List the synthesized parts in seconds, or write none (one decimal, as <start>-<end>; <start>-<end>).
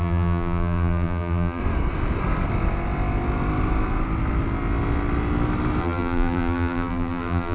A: 0.0-1.6; 5.8-7.5